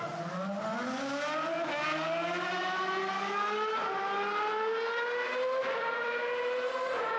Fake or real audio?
real